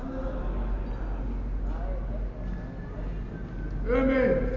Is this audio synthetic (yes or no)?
no